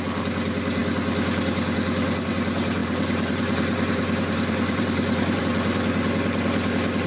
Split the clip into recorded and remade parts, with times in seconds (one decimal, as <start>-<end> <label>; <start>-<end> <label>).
0.0-2.8 recorded; 2.8-5.4 remade; 5.4-7.1 recorded

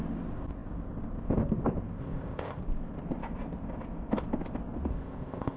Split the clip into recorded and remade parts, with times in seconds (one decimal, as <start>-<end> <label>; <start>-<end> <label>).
0.0-2.0 recorded; 2.0-2.6 remade; 2.6-4.9 recorded; 4.9-5.6 remade

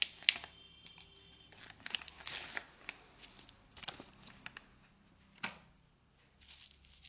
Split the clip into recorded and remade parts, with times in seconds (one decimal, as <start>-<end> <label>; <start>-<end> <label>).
0.0-7.1 recorded

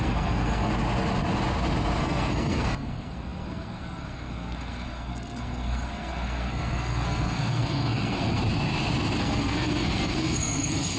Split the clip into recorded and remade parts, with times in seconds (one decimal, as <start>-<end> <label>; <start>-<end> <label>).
0.0-0.7 remade; 0.7-2.0 recorded; 2.0-8.4 remade; 8.4-9.2 recorded; 9.2-11.0 remade

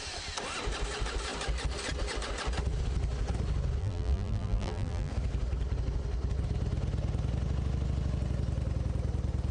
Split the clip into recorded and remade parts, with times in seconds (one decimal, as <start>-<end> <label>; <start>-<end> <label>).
0.0-3.8 recorded; 3.8-5.1 remade; 5.1-9.5 recorded

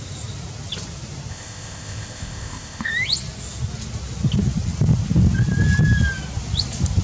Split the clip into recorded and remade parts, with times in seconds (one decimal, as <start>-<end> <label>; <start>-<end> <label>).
0.0-1.3 recorded; 1.3-2.9 remade; 2.9-7.0 recorded

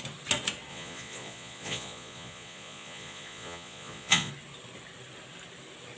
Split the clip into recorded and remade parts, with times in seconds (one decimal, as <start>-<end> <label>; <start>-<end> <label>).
0.0-0.7 recorded; 0.7-4.3 remade; 4.3-6.0 recorded